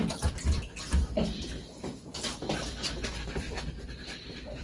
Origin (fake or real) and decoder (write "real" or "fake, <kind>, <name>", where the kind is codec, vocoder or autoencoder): fake, vocoder, BigVGAN v2